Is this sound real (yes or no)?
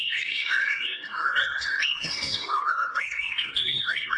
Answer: no